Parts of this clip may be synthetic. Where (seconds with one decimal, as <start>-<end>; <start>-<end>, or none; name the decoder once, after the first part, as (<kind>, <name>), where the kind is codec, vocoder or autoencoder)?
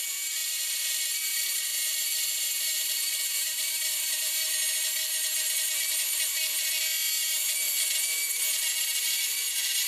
0.4-4.3 (vocoder, BigVGAN v2)